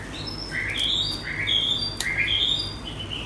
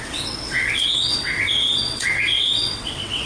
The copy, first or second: second